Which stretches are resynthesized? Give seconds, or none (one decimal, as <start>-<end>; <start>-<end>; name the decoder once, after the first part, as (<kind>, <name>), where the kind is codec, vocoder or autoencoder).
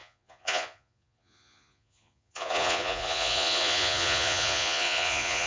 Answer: 0.0-5.5 (vocoder, Vocos)